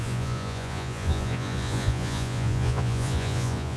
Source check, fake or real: fake